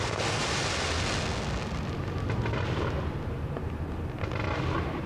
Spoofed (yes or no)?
no